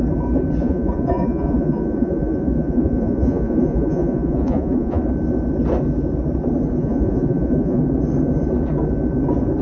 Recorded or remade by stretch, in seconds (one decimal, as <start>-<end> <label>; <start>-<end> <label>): 0.0-0.6 recorded; 0.6-5.0 remade; 5.0-6.8 recorded; 6.8-7.8 remade; 7.8-9.6 recorded